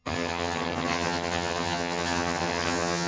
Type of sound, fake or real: fake